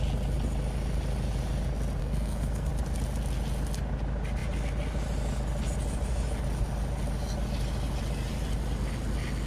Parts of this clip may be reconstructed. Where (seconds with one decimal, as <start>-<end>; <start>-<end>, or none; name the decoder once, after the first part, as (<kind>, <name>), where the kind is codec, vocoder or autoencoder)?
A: 2.0-2.7 (codec, SNAC)